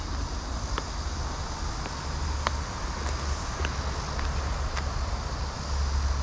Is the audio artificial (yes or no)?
no